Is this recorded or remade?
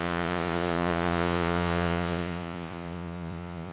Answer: remade